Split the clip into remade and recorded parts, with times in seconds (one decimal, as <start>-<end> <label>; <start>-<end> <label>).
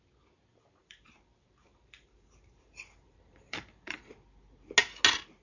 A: 0.0-0.8 recorded; 0.8-4.0 remade; 4.0-5.4 recorded